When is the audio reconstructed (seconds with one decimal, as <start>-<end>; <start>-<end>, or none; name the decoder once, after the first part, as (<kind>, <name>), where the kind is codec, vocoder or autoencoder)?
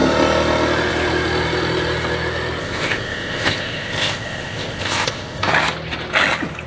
2.6-5.5 (codec, ZipCodec)